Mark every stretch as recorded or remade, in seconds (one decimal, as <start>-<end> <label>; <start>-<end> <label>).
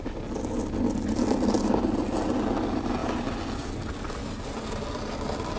0.0-5.6 recorded